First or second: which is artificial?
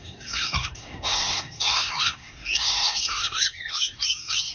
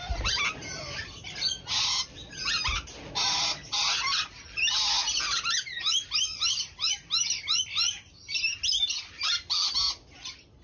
first